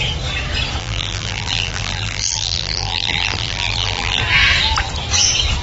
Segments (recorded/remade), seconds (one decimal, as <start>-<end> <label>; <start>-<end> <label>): 0.0-0.8 recorded; 0.8-4.2 remade; 4.2-5.6 recorded